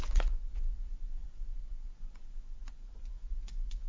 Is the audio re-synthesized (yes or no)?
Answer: yes